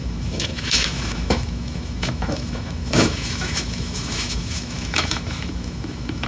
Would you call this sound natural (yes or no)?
no